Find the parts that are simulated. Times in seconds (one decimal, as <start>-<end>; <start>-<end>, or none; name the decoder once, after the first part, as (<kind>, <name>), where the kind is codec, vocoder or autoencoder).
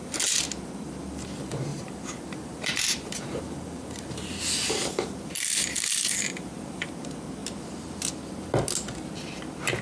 1.7-6.9 (vocoder, BigVGAN v2)